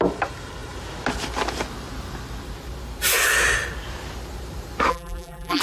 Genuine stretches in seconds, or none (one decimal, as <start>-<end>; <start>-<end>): 0.0-4.9